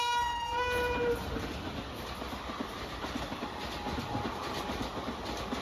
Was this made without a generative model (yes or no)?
yes